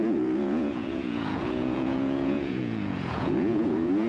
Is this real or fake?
fake